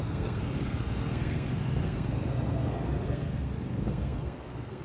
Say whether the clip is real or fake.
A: fake